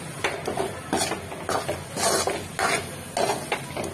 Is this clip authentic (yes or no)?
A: yes